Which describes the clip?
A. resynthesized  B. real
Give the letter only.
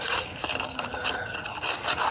B